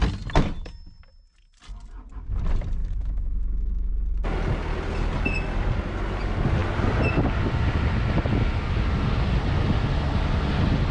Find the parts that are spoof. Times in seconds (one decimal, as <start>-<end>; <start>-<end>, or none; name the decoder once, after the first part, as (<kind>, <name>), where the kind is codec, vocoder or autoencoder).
2.8-3.9 (autoencoder, DAC-VAE)